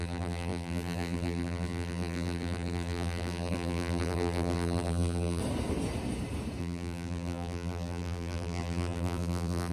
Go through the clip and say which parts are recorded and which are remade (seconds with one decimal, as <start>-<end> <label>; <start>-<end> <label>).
0.0-5.4 remade; 5.4-6.6 recorded; 6.6-9.7 remade